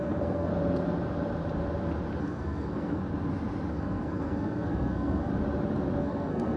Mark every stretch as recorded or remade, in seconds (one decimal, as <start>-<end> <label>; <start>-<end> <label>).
0.0-0.5 remade; 0.5-2.2 recorded; 2.2-3.0 remade; 3.0-3.7 recorded; 3.7-5.3 remade; 5.3-6.0 recorded; 6.0-6.6 remade